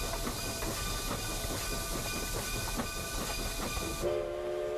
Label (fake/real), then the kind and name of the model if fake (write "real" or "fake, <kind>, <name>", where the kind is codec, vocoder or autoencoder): real